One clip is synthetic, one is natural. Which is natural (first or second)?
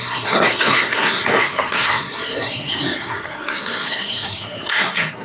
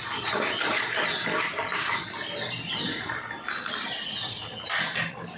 second